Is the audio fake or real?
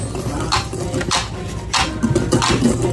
real